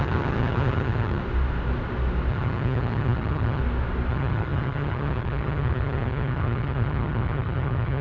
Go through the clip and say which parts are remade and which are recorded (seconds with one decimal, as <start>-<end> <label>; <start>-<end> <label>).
0.0-1.2 remade; 1.2-2.3 recorded; 2.3-3.6 remade; 3.6-4.1 recorded; 4.1-8.0 remade